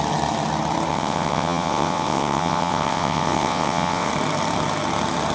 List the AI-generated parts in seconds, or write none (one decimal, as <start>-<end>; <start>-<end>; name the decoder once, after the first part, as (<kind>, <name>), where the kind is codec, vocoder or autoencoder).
0.9-4.1 (vocoder, WaveNeXt)